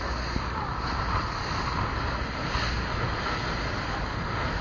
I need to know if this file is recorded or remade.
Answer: recorded